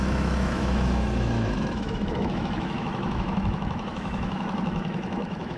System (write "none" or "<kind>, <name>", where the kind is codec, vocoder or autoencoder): autoencoder, DAC-VAE